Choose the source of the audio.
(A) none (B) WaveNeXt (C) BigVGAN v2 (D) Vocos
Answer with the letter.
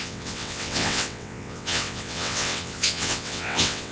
B